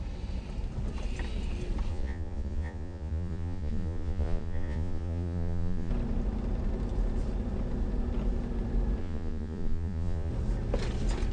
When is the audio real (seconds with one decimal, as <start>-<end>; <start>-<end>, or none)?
0.0-1.9; 5.9-9.0; 10.3-11.3